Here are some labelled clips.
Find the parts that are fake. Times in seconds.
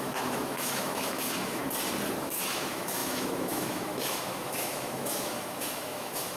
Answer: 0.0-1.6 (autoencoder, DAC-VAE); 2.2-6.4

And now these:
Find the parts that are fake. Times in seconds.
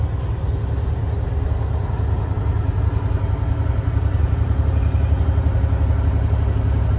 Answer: none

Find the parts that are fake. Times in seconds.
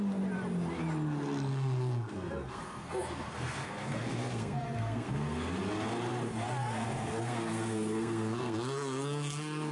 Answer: 1.5-5.6 (codec, SNAC); 6.6-9.7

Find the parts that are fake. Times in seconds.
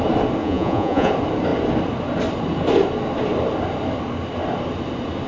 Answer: 0.4-1.1 (vocoder, Vocos)